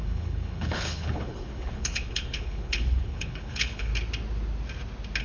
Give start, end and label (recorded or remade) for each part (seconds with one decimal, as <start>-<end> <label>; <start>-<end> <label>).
0.0-3.9 remade; 3.9-5.2 recorded